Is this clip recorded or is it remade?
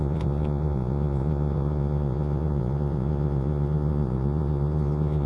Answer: remade